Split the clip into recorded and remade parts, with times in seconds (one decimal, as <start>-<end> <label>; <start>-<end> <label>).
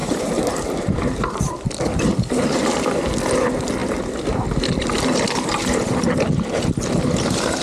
0.0-1.4 remade; 1.4-7.6 recorded